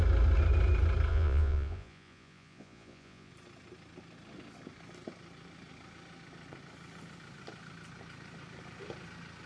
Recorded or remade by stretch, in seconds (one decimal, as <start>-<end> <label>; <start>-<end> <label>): 0.0-1.1 recorded; 1.1-3.3 remade; 3.3-9.5 recorded